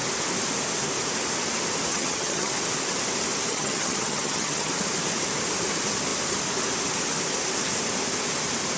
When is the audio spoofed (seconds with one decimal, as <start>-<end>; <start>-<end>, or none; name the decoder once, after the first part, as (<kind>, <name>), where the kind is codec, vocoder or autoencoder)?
1.9-2.5 (vocoder, HiFi-GAN); 3.5-4.7